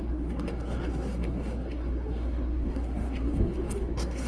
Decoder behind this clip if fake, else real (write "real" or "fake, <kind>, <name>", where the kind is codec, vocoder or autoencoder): fake, codec, SNAC